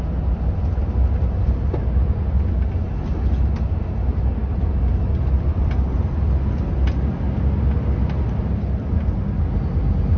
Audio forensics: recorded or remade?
recorded